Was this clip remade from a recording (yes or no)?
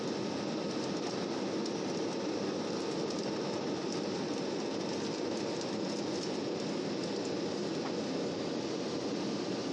no